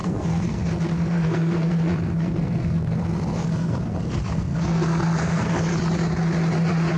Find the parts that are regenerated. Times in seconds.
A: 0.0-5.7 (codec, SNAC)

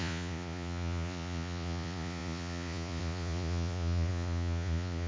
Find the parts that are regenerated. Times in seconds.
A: 0.0-5.1 (vocoder, Vocos)

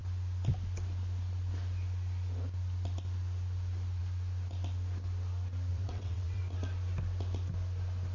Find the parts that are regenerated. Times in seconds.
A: 5.7-6.4 (vocoder, WaveNeXt)